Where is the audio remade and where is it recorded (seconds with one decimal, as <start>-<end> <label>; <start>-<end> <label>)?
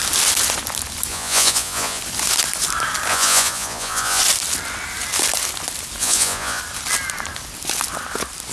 0.0-1.1 recorded; 1.1-2.0 remade; 2.0-3.1 recorded; 3.1-4.2 remade; 4.2-6.0 recorded; 6.0-6.6 remade; 6.6-8.5 recorded